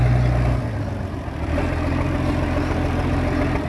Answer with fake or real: real